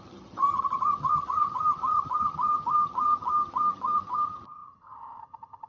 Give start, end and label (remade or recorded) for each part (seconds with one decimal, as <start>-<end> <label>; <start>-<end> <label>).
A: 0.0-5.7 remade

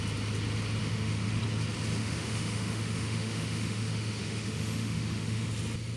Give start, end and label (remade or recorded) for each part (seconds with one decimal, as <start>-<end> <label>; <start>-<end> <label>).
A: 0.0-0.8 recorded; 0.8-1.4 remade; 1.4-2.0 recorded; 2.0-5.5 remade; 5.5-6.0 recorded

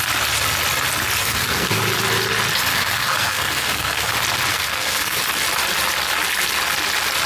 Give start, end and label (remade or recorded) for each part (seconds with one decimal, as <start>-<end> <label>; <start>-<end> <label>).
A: 0.0-1.2 recorded; 1.2-1.8 remade; 1.8-2.7 recorded; 2.7-4.1 remade; 4.1-4.5 recorded; 4.5-5.2 remade; 5.2-7.3 recorded